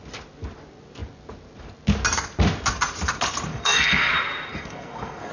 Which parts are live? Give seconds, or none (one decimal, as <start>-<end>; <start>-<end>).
0.0-3.5; 4.1-4.5